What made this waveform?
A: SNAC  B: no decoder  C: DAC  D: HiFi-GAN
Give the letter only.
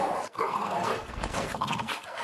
A